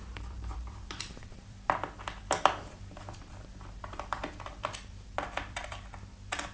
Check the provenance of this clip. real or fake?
fake